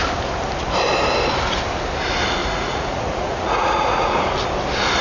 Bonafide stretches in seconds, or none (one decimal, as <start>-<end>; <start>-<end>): 0.0-2.4; 4.2-5.0